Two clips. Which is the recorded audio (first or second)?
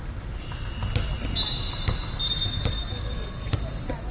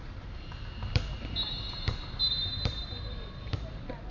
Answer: first